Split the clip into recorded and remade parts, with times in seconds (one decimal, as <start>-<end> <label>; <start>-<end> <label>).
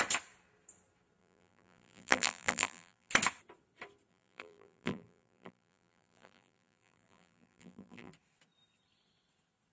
0.0-1.2 recorded; 1.2-3.1 remade; 3.1-4.1 recorded; 4.1-8.1 remade; 8.1-9.7 recorded